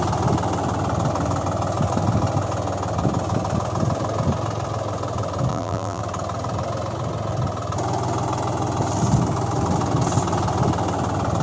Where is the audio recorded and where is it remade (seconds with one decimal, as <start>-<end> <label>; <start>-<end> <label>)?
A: 0.0-5.5 recorded; 5.5-6.0 remade; 6.0-11.4 recorded